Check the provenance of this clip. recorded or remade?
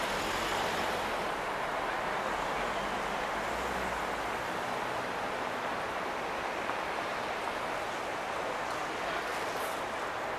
recorded